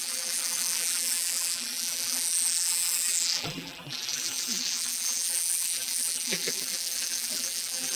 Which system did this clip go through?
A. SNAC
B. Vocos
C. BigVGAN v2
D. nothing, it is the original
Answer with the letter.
C